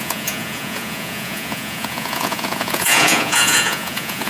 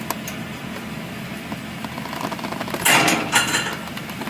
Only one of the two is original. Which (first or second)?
second